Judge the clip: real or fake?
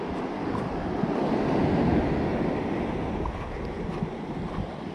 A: real